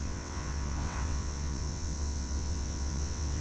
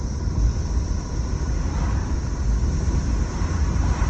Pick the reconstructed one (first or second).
first